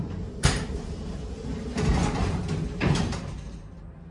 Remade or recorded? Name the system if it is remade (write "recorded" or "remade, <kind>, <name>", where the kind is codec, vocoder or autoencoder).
remade, vocoder, BigVGAN v2